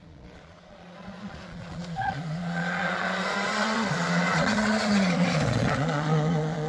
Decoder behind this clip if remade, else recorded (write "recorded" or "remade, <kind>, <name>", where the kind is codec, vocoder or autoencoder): remade, vocoder, Vocos